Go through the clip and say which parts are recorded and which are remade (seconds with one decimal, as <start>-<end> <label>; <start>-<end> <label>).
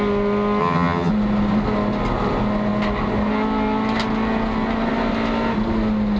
0.0-0.6 recorded; 0.6-1.1 remade; 1.1-6.2 recorded